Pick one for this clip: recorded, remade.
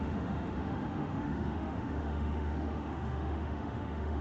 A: remade